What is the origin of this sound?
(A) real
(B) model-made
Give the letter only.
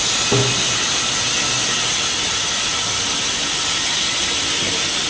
A